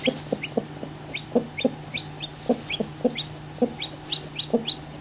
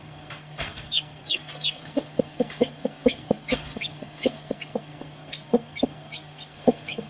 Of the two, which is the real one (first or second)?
first